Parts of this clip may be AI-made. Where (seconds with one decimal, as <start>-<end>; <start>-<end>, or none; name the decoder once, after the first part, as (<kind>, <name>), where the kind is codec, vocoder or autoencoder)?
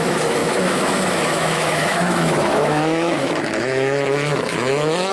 0.0-5.1 (autoencoder, DAC-VAE)